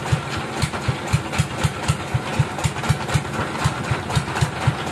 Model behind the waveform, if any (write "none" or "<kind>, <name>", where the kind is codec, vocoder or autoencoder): none